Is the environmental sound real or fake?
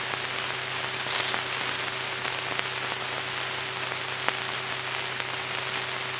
real